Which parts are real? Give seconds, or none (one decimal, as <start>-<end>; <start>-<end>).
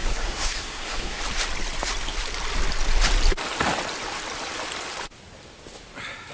1.2-6.3